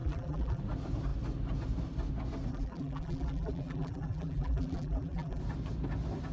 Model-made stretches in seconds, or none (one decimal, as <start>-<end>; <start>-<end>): 0.0-0.6; 2.5-5.4